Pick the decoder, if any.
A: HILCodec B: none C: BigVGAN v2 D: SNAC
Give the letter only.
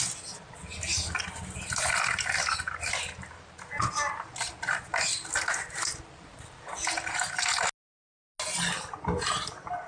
B